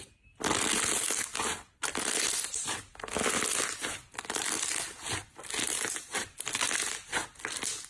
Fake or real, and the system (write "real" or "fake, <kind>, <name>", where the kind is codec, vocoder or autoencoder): real